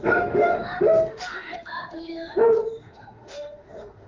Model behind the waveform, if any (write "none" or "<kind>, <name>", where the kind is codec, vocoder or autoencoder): autoencoder, DAC-VAE